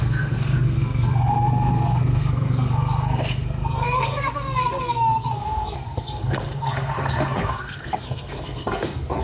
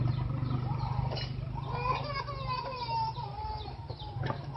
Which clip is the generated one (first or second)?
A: first